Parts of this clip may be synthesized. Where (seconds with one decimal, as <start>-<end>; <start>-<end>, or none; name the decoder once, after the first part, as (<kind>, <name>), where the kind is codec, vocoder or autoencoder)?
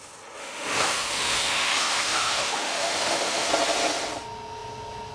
0.4-3.5 (autoencoder, DAC-VAE)